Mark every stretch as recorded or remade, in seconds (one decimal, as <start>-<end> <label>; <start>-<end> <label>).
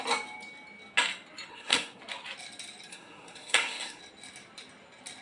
0.0-1.5 recorded; 1.5-2.0 remade; 2.0-2.9 recorded; 2.9-4.0 remade; 4.0-5.2 recorded